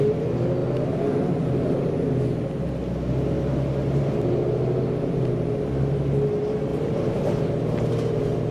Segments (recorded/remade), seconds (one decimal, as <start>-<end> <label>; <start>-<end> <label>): 0.0-6.7 recorded; 6.7-7.5 remade; 7.5-8.5 recorded